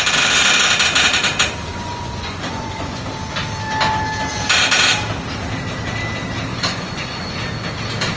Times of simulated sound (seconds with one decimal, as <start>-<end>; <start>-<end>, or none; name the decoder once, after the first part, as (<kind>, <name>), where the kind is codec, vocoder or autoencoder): 1.7-3.0 (vocoder, Vocos); 6.5-7.4